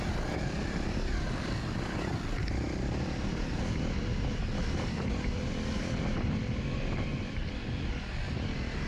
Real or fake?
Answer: real